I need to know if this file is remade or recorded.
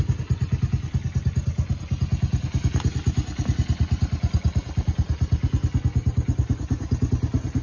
recorded